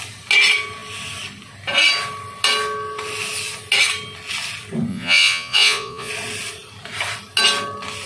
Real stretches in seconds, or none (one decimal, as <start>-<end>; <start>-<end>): 0.0-4.9; 6.1-8.1